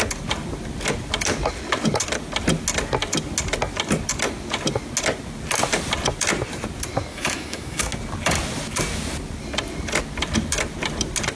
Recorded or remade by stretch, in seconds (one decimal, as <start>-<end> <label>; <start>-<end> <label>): 0.0-7.1 recorded; 7.1-7.8 remade; 7.8-11.4 recorded